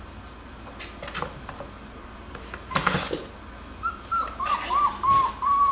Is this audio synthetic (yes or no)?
no